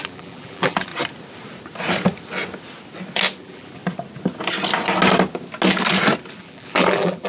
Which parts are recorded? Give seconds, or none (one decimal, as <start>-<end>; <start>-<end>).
0.9-3.4; 3.8-6.4

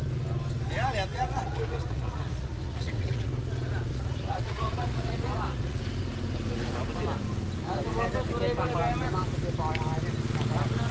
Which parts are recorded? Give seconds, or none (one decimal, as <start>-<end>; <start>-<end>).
0.0-1.1; 3.3-3.9; 5.8-10.9

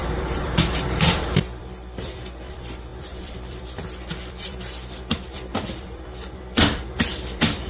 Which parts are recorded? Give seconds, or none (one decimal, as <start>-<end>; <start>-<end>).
none